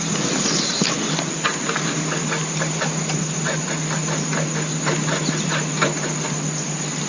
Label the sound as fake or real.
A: real